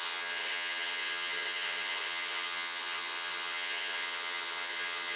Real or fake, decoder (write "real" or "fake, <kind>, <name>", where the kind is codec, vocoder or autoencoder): fake, vocoder, HiFi-GAN